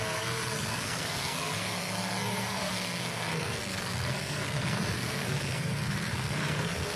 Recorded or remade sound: remade